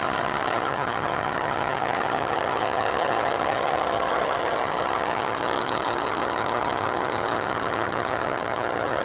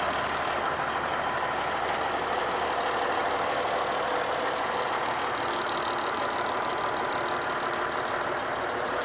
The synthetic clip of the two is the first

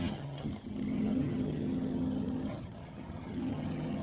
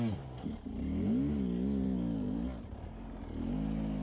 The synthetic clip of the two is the first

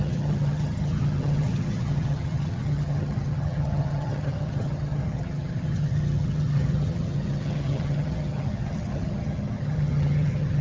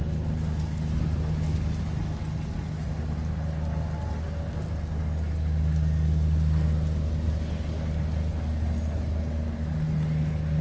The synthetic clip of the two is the first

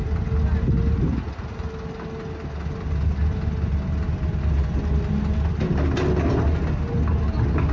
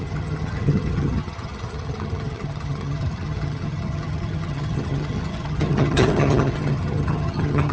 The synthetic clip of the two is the second